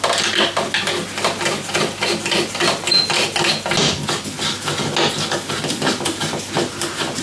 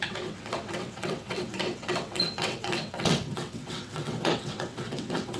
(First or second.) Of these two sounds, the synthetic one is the second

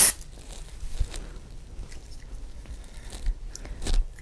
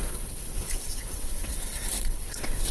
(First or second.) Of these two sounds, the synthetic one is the second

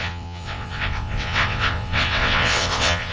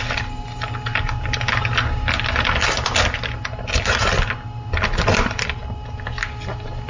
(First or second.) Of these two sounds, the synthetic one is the first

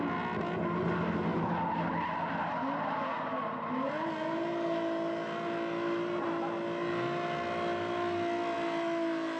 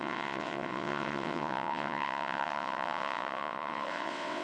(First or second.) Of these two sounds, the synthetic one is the second